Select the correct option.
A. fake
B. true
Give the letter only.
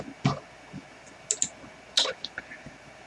B